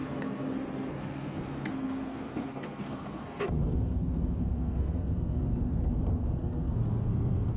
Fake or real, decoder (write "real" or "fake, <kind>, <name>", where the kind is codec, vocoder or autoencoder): fake, codec, SNAC